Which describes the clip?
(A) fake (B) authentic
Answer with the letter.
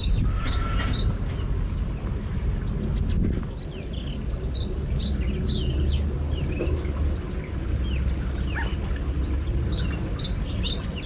B